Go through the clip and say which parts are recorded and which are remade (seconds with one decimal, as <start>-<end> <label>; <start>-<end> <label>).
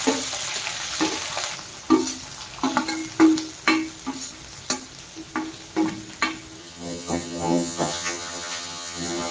0.0-6.6 recorded; 6.6-9.3 remade